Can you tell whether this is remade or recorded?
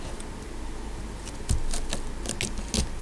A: recorded